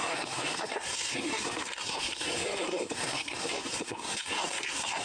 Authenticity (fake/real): fake